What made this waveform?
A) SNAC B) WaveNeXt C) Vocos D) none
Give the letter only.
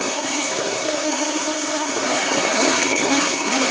A